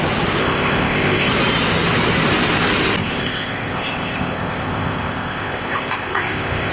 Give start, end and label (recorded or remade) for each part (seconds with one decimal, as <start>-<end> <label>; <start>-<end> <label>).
0.0-0.4 recorded; 0.4-1.3 remade; 1.3-3.0 recorded; 3.0-6.7 remade